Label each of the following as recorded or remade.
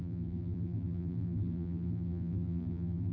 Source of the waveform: remade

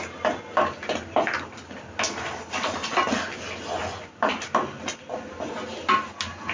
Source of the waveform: recorded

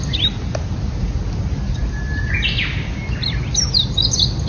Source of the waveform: recorded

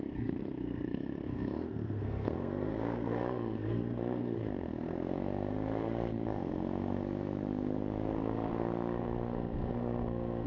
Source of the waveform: remade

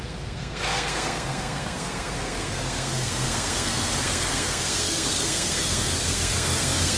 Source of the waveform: remade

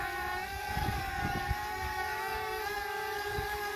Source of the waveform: remade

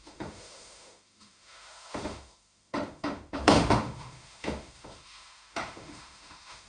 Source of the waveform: remade